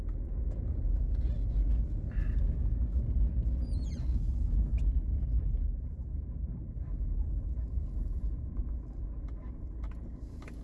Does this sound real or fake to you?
real